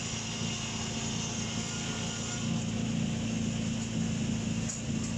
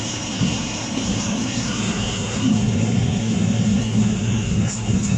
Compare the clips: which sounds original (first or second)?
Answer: first